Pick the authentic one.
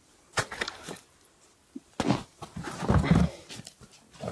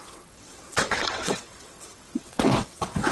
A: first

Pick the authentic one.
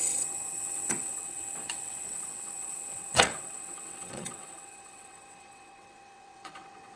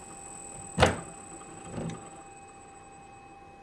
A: second